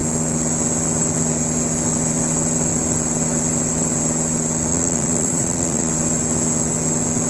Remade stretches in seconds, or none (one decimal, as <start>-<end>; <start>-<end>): 4.7-5.9